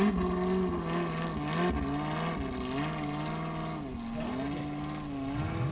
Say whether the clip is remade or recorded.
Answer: recorded